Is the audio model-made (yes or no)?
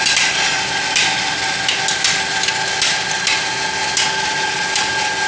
no